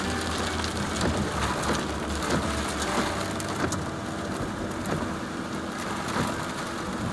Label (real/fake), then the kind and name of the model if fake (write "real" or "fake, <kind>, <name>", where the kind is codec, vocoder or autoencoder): real